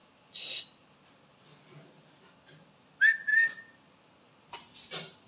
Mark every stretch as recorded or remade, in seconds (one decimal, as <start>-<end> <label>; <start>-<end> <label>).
0.0-5.3 recorded